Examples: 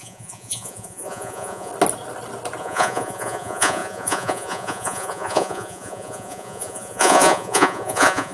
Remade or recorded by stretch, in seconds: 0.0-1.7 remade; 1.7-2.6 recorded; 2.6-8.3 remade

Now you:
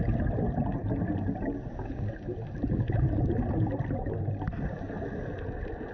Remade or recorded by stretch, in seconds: 0.0-5.9 recorded

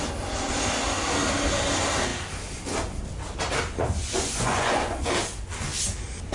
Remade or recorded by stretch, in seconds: 0.0-4.0 recorded; 4.0-5.1 remade; 5.1-6.3 recorded

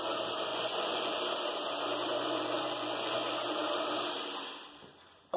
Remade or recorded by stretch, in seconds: 0.0-0.5 recorded; 0.5-1.2 remade; 1.2-2.1 recorded; 2.1-3.3 remade; 3.3-5.4 recorded

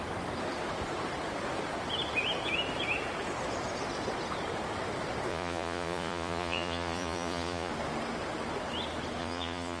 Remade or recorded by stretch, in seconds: 0.0-5.3 recorded; 5.3-7.7 remade; 7.7-9.2 recorded; 9.2-9.8 remade

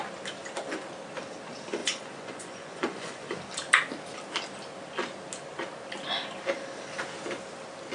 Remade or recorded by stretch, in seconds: 0.0-1.8 recorded; 1.8-3.4 remade; 3.4-7.9 recorded

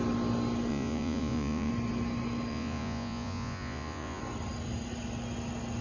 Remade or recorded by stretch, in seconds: 0.0-0.7 recorded; 0.7-1.7 remade; 1.7-2.5 recorded; 2.5-4.2 remade; 4.2-5.8 recorded